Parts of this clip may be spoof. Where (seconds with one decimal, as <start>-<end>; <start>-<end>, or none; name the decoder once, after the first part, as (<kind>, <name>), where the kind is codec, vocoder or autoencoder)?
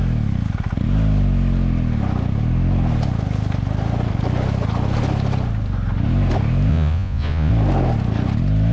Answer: 6.7-7.5 (vocoder, Vocos)